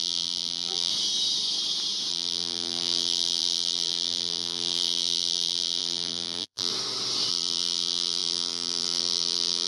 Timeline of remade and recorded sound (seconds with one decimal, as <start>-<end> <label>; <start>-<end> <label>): 0.0-0.9 remade; 0.9-2.1 recorded; 2.1-6.7 remade; 6.7-7.3 recorded; 7.3-9.7 remade